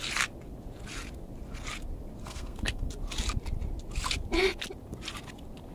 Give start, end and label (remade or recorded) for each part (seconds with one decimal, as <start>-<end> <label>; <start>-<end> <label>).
0.0-2.2 recorded; 2.2-2.9 remade; 2.9-5.7 recorded